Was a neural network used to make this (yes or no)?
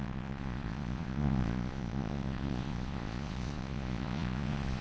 yes